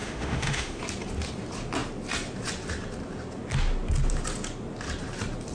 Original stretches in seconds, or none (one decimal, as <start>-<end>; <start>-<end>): 0.8-5.5

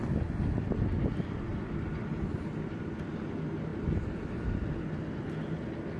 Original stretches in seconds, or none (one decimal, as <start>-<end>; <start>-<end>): 0.0-1.5; 2.8-3.7; 4.5-6.0

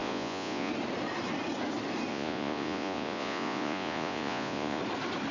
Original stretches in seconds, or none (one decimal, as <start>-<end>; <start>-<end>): 0.7-2.1; 4.8-5.3

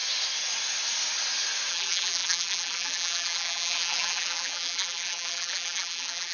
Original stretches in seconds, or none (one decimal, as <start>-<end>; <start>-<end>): 0.0-1.7

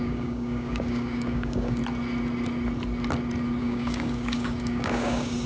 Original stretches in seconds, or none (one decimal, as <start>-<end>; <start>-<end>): 1.8-3.6

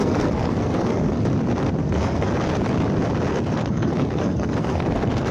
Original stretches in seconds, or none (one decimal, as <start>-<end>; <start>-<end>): 1.2-1.8; 2.3-3.3